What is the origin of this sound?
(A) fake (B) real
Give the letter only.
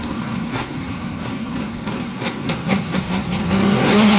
A